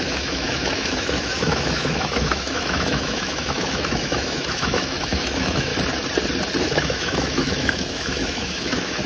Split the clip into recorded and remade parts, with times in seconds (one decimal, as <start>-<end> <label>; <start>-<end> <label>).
0.0-5.7 remade; 5.7-6.6 recorded; 6.6-9.1 remade